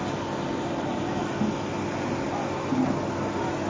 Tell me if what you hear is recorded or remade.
recorded